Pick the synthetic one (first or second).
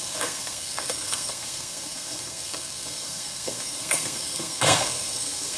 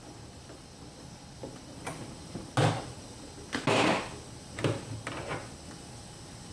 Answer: first